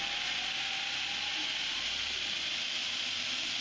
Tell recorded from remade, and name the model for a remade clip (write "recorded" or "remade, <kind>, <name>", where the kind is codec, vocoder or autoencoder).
recorded